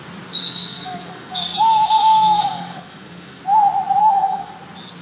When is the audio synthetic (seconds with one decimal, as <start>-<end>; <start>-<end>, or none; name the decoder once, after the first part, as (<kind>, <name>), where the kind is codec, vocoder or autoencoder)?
0.4-3.4 (codec, SNAC); 4.0-4.5